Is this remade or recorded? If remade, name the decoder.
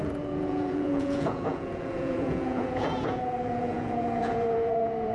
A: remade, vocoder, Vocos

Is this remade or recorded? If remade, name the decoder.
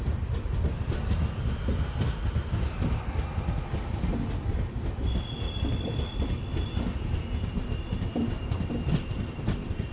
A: recorded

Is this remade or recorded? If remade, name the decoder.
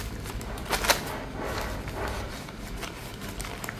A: recorded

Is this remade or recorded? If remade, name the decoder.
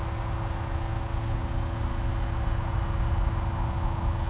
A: recorded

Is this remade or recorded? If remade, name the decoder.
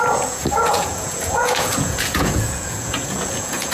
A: remade, vocoder, Vocos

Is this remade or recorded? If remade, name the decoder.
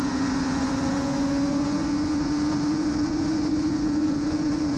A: remade, vocoder, Vocos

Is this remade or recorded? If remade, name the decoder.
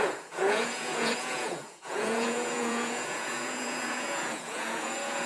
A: remade, vocoder, Vocos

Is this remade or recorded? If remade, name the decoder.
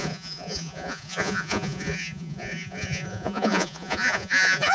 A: remade, vocoder, Vocos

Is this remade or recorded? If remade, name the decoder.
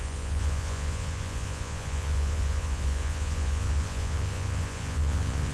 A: remade, vocoder, Vocos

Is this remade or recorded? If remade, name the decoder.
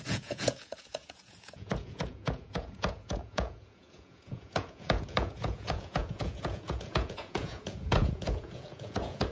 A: remade, vocoder, Vocos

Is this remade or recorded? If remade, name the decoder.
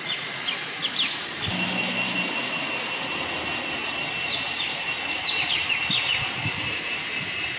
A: recorded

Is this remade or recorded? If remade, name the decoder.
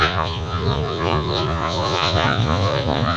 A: remade, vocoder, Vocos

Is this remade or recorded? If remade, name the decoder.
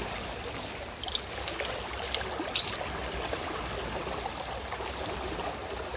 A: recorded